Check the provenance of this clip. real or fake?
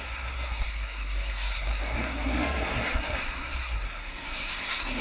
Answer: fake